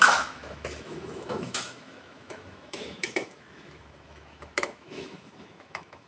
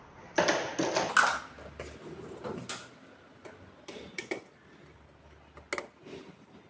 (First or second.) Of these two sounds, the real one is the second